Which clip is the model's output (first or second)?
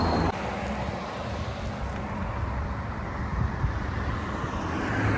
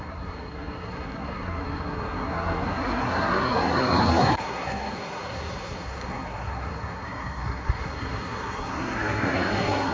second